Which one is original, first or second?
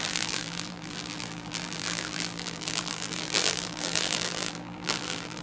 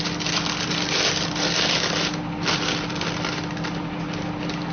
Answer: second